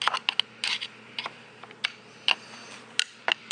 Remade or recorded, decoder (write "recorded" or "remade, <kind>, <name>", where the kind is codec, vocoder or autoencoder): recorded